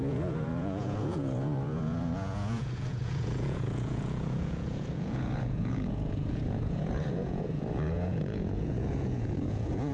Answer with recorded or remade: remade